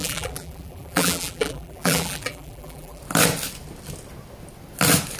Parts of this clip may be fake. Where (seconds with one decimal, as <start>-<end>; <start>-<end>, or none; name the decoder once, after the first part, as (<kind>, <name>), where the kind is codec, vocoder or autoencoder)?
0.0-3.0 (vocoder, BigVGAN v2)